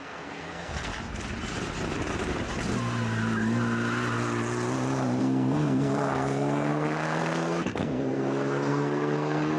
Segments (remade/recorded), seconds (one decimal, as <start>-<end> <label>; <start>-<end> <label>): 0.0-0.9 remade; 0.9-5.2 recorded; 5.2-9.6 remade